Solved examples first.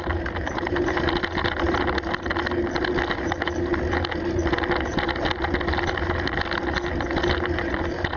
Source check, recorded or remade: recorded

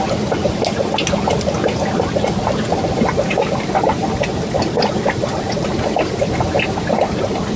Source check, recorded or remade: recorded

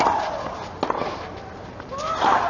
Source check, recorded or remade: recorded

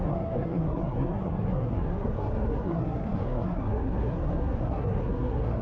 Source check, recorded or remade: remade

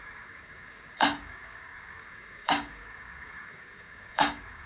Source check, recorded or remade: remade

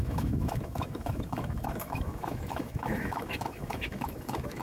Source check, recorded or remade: remade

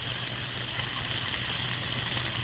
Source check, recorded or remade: recorded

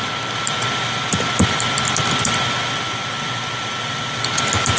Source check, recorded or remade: recorded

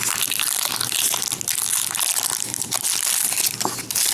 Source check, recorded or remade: recorded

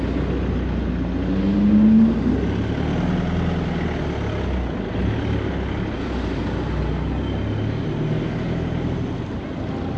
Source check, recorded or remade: recorded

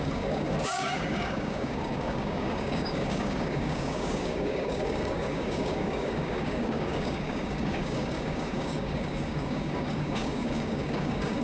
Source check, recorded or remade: remade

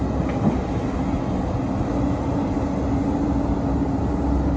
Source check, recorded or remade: recorded